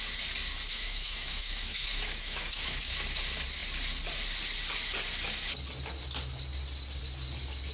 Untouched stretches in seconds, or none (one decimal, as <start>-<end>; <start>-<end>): 0.0-0.7; 2.8-7.7